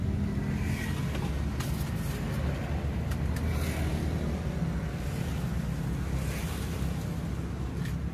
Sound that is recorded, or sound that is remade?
recorded